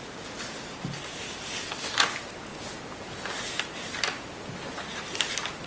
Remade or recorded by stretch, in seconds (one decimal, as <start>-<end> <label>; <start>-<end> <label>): 0.0-5.7 recorded